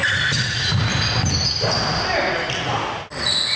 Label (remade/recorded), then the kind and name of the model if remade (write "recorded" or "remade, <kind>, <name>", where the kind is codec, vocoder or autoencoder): recorded